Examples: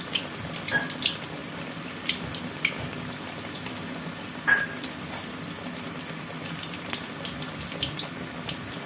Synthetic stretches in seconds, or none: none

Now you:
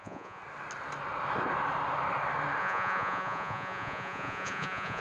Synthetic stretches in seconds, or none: 0.0-0.4 (vocoder, Vocos); 2.6-5.0

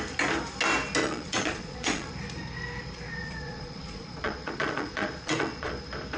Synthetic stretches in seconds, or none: 1.0-2.1 (vocoder, Vocos); 3.2-5.7

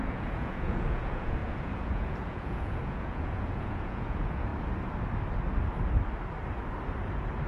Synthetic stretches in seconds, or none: 0.0-4.5 (vocoder, Vocos)

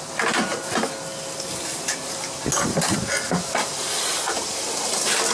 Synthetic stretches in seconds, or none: none

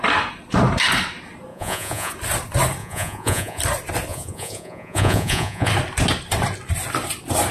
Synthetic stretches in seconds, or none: 1.5-2.1 (vocoder, Vocos); 2.8-3.6; 4.1-5.7

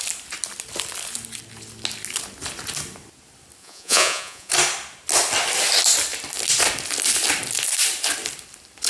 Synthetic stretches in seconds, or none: 3.6-4.5 (vocoder, Vocos)